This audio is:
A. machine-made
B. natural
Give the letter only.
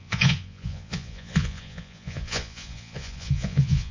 A